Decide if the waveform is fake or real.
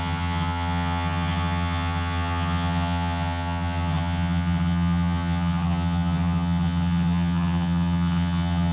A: fake